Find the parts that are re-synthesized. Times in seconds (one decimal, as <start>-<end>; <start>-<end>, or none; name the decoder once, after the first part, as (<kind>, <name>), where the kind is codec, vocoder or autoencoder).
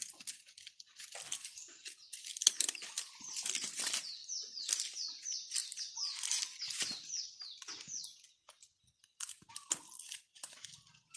4.2-4.7 (vocoder, BigVGAN v2)